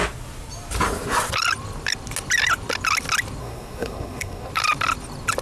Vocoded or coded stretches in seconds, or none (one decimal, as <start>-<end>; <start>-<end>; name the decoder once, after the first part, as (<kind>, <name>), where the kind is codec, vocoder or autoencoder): 3.4-4.5 (codec, SNAC)